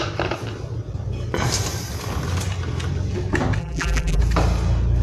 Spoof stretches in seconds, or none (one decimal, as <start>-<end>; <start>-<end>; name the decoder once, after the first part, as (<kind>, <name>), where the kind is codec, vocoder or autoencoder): 3.6-4.2 (vocoder, BigVGAN v2)